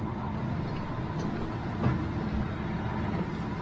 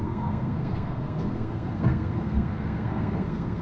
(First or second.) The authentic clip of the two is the first